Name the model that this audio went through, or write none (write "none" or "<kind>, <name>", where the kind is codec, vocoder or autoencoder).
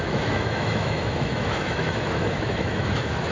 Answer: autoencoder, DAC-VAE